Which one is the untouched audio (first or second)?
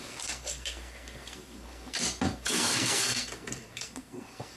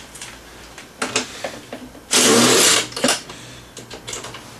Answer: second